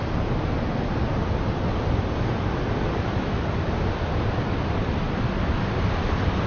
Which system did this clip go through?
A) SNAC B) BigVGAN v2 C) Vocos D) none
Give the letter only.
D